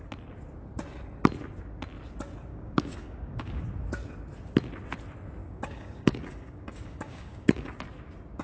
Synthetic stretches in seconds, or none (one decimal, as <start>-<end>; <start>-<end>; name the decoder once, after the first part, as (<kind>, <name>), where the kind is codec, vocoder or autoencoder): 2.5-3.6 (codec, DAC); 5.4-7.8